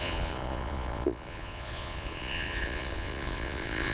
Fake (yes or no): yes